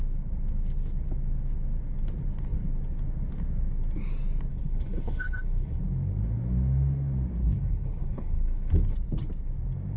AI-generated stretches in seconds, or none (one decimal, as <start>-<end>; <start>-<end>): 4.5-5.8; 7.4-8.7